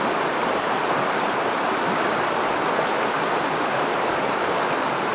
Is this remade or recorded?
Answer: recorded